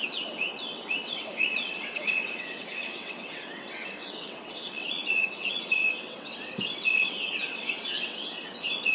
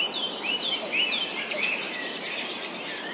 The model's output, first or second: first